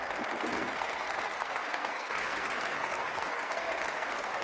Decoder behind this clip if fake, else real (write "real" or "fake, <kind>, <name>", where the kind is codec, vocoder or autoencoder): fake, codec, SNAC